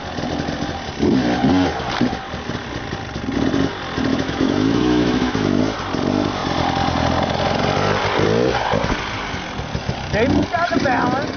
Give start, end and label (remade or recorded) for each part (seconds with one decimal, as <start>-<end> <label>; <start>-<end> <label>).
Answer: 0.0-4.1 recorded; 4.1-5.6 remade; 5.6-11.4 recorded